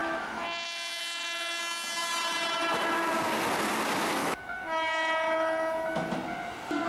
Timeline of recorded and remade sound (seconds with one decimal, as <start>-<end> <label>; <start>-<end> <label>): 0.0-1.6 remade; 1.6-4.2 recorded; 4.2-6.1 remade; 6.1-6.9 recorded